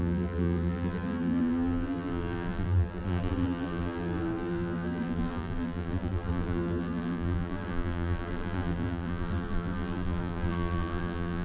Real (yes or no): no